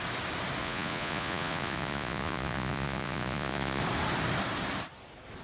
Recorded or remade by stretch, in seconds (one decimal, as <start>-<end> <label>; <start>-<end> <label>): 0.0-0.6 recorded; 0.6-3.8 remade; 3.8-5.4 recorded